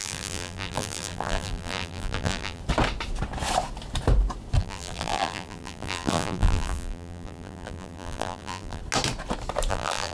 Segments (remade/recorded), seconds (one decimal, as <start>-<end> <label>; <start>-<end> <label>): 0.0-2.6 remade; 2.6-4.6 recorded; 4.6-8.8 remade; 8.8-9.7 recorded; 9.7-10.1 remade

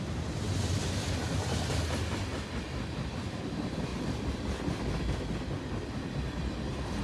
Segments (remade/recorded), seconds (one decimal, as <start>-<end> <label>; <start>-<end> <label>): 0.0-7.0 recorded